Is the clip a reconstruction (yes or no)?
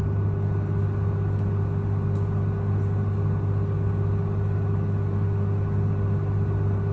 no